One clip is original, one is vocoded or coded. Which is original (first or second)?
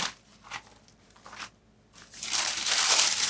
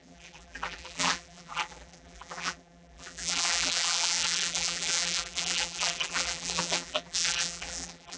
first